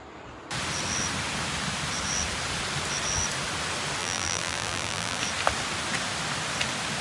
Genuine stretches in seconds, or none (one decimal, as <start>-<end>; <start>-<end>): 0.0-4.0; 5.2-7.0